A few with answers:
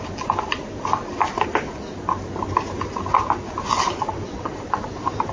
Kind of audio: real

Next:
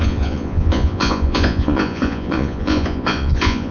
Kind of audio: fake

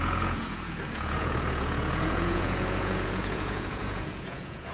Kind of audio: fake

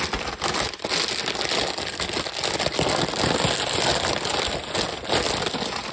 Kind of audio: real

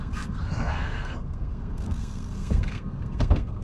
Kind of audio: fake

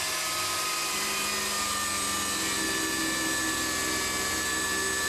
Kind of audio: real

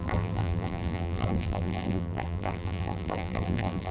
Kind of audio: fake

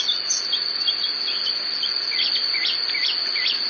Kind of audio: real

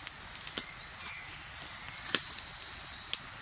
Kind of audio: real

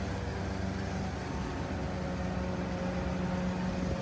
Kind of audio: real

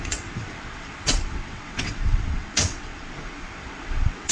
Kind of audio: fake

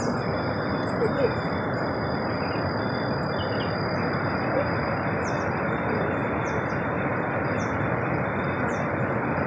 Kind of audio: real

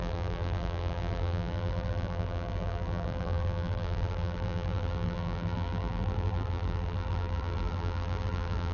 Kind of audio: fake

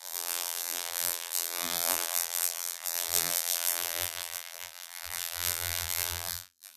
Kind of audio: fake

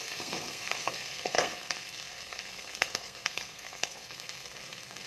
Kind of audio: fake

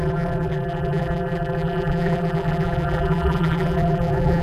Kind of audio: fake